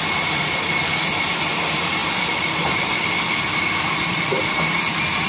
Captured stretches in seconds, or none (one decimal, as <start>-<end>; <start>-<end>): 0.0-2.0; 4.2-5.3